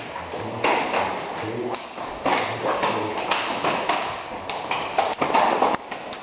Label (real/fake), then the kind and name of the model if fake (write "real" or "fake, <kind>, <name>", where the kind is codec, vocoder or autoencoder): real